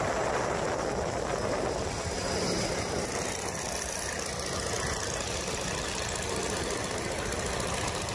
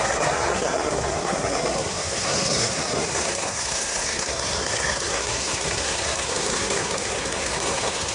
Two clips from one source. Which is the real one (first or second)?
first